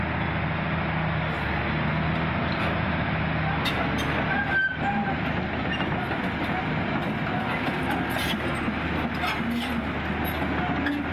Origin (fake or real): real